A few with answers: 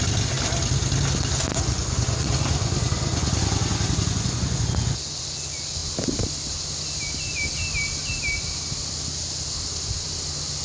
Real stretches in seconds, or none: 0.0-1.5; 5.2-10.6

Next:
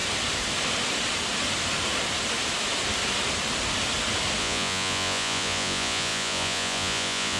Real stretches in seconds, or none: 0.0-4.4

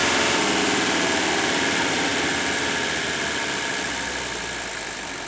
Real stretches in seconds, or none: 0.0-5.3